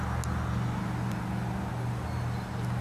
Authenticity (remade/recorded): recorded